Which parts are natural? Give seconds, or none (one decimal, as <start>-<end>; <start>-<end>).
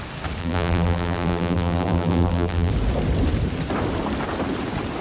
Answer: 0.0-0.4; 2.7-5.0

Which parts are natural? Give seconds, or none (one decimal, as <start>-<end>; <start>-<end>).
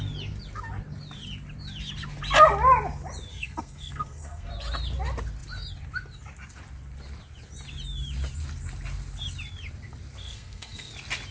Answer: 0.0-3.3; 4.5-10.2; 10.9-11.3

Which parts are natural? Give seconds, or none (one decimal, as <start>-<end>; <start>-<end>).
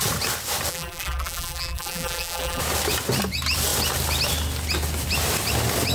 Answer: 0.0-0.7; 2.6-5.9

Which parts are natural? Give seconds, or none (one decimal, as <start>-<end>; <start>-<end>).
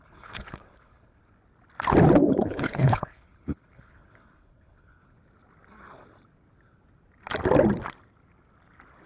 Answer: 1.2-2.3; 5.0-9.1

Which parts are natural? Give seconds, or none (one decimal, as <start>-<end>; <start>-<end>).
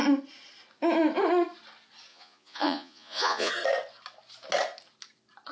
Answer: 0.0-2.1; 3.5-5.5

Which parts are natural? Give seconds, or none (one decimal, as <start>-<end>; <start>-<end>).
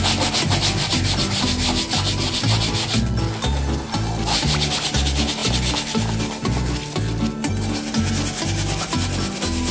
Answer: 0.0-9.7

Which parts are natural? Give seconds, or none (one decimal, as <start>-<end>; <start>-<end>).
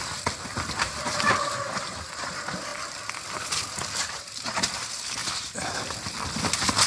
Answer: 0.0-2.7; 4.7-5.2; 6.5-6.9